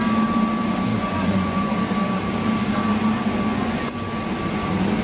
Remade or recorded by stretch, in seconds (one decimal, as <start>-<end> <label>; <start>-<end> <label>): 0.0-0.9 recorded; 0.9-1.8 remade; 1.8-3.5 recorded; 3.5-4.0 remade; 4.0-5.0 recorded